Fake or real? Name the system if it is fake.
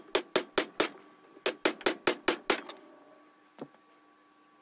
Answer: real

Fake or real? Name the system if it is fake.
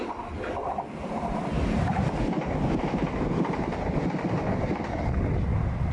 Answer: real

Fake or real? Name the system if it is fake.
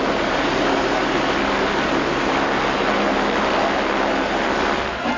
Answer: real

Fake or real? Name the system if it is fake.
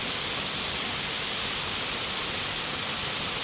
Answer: real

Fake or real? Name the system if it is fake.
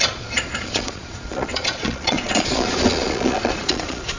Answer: fake, vocoder, Vocos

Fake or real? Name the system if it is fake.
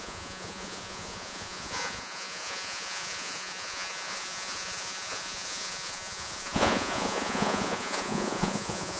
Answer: fake, vocoder, Vocos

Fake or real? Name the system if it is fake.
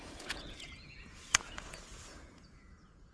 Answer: fake, vocoder, Vocos